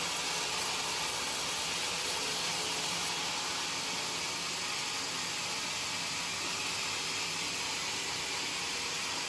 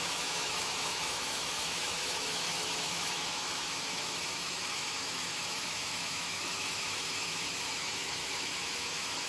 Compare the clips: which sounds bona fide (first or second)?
first